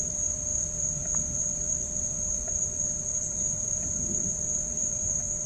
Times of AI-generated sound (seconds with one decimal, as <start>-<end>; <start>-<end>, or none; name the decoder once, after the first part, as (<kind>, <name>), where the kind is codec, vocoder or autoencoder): 0.0-5.5 (vocoder, BigVGAN v2)